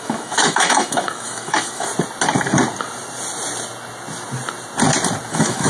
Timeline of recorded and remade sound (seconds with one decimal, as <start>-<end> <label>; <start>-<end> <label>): 0.0-1.9 remade; 1.9-5.3 recorded; 5.3-5.7 remade